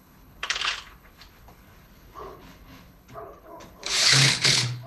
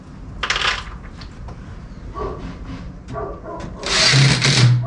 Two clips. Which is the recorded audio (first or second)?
second